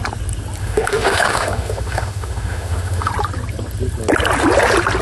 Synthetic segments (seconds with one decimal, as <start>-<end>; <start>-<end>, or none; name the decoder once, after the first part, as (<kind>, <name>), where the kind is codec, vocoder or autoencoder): 0.6-3.1 (autoencoder, DAC-VAE)